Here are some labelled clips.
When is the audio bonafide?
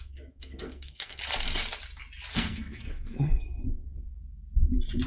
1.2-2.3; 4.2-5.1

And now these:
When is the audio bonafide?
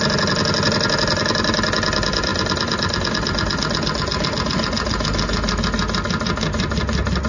0.0-7.3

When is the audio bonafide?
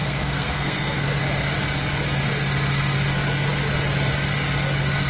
1.2-5.1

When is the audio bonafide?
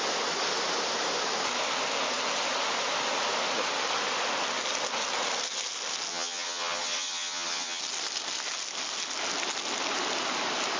0.0-6.1; 7.8-10.8